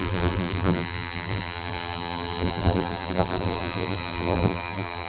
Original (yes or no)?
no